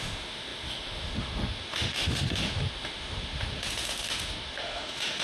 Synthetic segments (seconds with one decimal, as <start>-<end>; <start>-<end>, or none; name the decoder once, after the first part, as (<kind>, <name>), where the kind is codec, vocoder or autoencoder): 0.0-5.2 (autoencoder, DAC-VAE)